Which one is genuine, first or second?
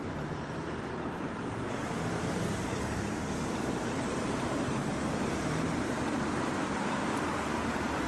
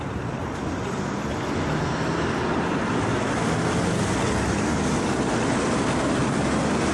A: second